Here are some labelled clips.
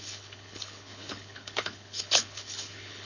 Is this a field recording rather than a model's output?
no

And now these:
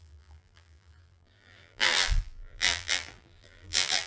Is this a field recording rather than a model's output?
no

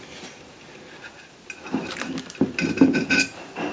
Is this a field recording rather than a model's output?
yes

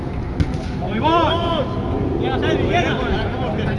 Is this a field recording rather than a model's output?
yes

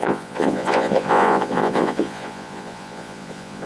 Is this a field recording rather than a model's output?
no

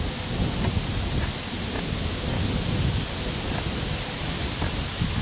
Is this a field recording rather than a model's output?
yes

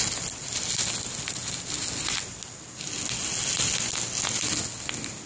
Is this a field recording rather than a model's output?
yes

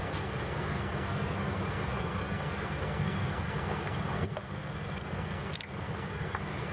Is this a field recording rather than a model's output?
no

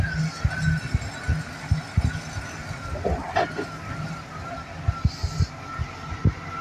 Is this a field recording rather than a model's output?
yes